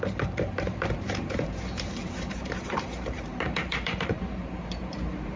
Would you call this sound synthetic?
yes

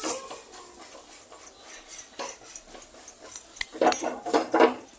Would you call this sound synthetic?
no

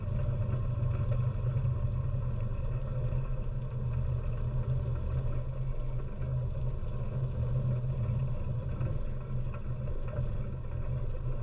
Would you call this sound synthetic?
no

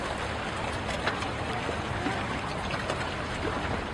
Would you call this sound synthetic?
yes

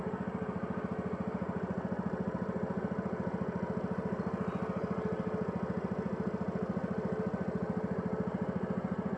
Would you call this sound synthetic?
no